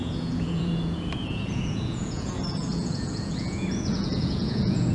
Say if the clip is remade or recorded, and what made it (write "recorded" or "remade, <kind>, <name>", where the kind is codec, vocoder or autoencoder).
remade, vocoder, Vocos